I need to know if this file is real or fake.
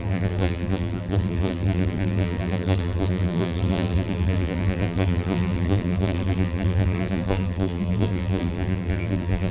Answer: fake